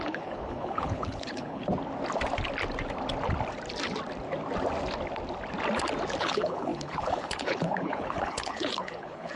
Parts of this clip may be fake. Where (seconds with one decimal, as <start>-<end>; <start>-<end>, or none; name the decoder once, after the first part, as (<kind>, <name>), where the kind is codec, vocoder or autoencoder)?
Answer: 0.0-1.7 (codec, HILCodec); 6.2-9.4